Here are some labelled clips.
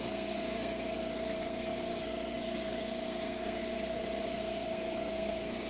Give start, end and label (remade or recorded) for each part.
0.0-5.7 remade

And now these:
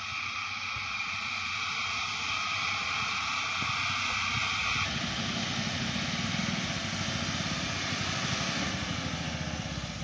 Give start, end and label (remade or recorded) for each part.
0.0-10.0 recorded